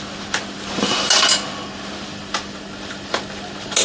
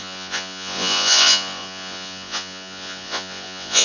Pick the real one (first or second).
first